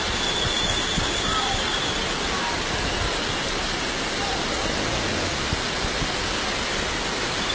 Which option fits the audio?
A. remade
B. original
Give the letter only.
B